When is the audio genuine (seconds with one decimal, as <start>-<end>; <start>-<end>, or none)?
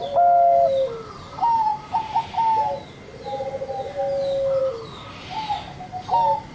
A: 0.0-6.5